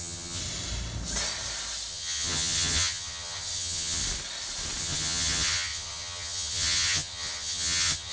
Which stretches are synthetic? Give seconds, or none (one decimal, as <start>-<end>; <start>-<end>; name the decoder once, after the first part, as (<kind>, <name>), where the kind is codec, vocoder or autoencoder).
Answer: 0.0-0.4 (vocoder, HiFi-GAN); 1.9-4.0; 4.8-8.1